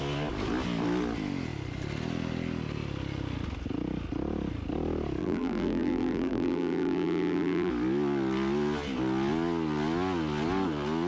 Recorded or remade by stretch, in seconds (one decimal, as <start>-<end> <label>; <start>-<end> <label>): 0.0-5.2 recorded; 5.2-7.7 remade; 7.7-11.1 recorded